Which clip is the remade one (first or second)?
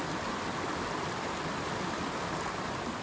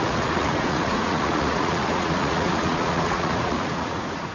second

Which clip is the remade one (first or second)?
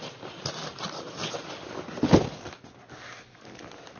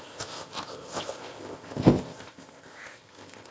second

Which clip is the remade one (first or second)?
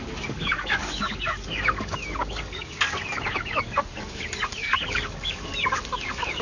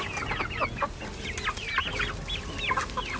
first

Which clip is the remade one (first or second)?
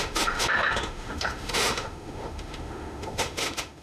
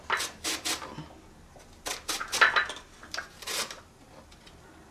first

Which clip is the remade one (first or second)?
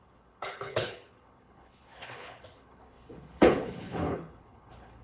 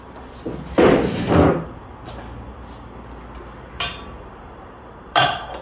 first